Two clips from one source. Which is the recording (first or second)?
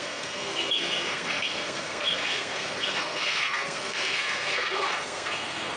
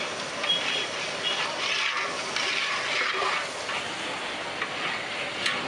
second